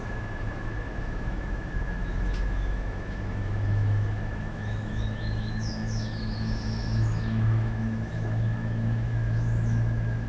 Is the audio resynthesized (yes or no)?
yes